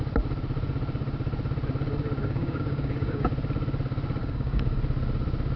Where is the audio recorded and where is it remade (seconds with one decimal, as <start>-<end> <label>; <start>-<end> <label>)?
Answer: 0.0-2.2 recorded; 2.2-3.3 remade; 3.3-4.2 recorded; 4.2-4.8 remade; 4.8-5.6 recorded